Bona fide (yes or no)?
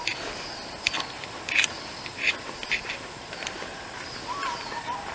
yes